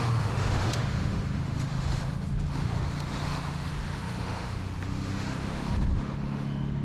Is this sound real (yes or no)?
no